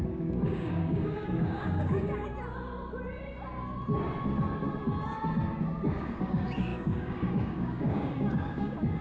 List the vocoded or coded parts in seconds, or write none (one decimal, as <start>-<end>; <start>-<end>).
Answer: 0.0-2.3; 5.9-9.0